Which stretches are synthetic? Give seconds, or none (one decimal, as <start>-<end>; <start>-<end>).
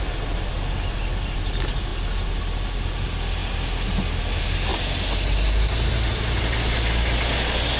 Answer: none